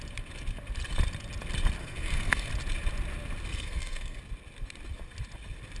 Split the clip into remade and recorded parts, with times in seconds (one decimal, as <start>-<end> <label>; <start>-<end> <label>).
0.0-1.8 recorded; 1.8-2.5 remade; 2.5-3.5 recorded; 3.5-4.2 remade; 4.2-5.8 recorded